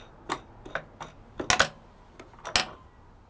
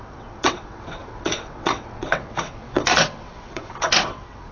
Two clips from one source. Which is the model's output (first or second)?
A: second